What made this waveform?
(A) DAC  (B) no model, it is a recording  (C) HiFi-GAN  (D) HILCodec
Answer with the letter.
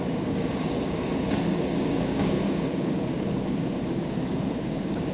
A